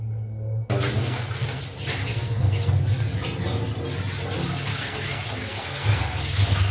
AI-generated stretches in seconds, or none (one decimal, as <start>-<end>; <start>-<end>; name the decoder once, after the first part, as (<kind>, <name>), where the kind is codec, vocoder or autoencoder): 1.0-1.6 (codec, SNAC); 2.0-2.7; 4.7-6.7